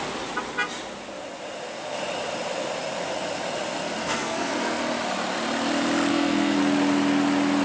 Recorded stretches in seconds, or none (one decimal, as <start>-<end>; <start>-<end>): 0.0-4.0; 4.8-6.1; 6.6-7.6